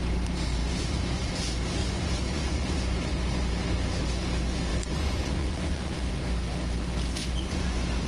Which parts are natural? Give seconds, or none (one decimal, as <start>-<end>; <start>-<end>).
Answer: 0.0-0.6; 1.3-1.8; 3.4-4.7; 6.1-7.2